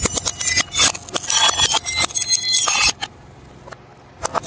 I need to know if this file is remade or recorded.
recorded